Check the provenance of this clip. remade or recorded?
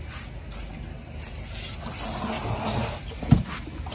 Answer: recorded